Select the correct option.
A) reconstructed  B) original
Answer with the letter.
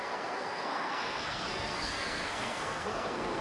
A